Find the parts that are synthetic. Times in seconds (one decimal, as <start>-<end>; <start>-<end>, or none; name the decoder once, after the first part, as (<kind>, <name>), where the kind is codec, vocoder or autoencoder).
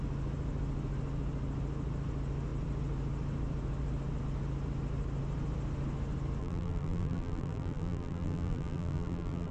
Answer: 6.4-9.5 (vocoder, BigVGAN v2)